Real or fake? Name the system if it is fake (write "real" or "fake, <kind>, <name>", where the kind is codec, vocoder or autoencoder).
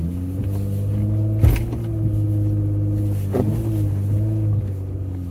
real